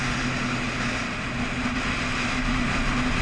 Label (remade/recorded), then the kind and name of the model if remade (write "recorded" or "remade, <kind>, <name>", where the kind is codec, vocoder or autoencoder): recorded